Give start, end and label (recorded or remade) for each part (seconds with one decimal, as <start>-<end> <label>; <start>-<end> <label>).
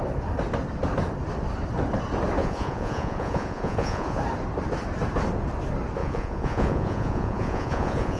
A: 0.0-2.4 recorded; 2.4-4.2 remade; 4.2-6.0 recorded; 6.0-8.2 remade